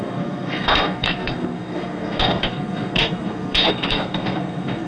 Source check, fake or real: fake